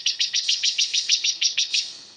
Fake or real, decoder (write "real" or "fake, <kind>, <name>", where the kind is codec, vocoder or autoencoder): fake, codec, SNAC